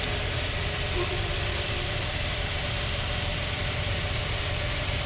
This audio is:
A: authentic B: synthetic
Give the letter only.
B